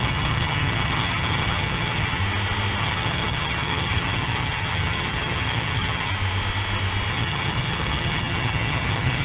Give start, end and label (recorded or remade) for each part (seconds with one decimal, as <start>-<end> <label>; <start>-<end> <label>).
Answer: 0.0-2.2 remade; 2.2-2.8 recorded; 2.8-6.1 remade; 6.1-7.1 recorded; 7.1-9.2 remade